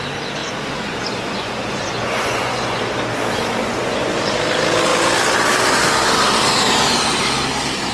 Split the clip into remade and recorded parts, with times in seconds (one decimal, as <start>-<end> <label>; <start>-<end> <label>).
0.0-0.4 recorded; 0.4-3.2 remade; 3.2-3.6 recorded; 3.6-4.2 remade; 4.2-7.9 recorded